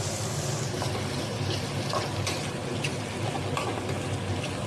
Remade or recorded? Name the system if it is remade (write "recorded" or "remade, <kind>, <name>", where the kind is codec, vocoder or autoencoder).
recorded